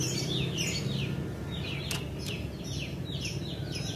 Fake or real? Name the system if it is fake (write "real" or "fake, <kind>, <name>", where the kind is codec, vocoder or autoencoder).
real